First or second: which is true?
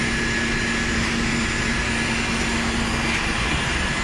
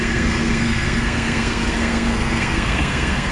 first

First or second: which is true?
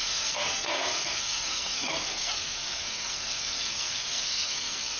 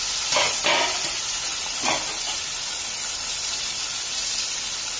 second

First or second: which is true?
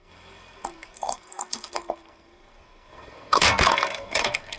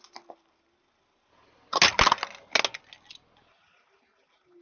second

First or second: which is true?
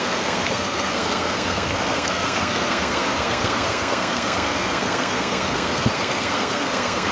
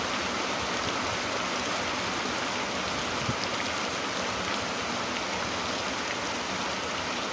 second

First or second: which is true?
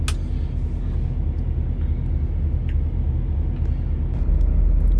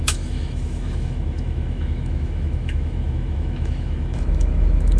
first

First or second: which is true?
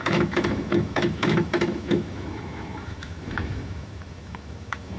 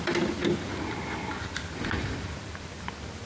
second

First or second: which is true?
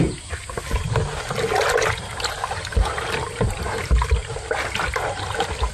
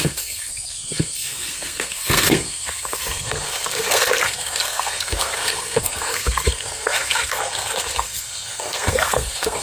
first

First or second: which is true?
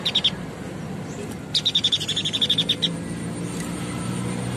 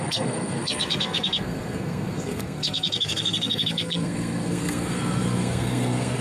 first